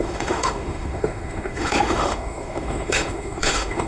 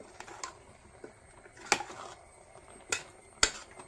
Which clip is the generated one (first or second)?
first